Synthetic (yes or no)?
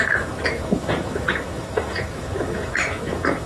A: yes